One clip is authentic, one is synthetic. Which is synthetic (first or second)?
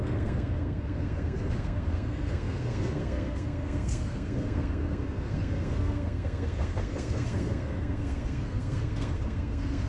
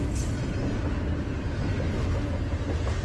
first